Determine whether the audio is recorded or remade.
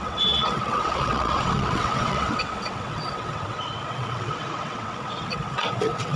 remade